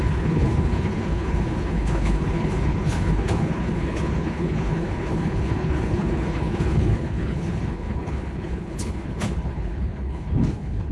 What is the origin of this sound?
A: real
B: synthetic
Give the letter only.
B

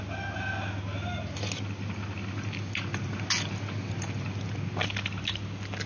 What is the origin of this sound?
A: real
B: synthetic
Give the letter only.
A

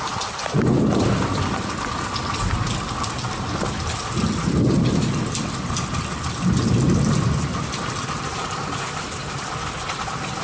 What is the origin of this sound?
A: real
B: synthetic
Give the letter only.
A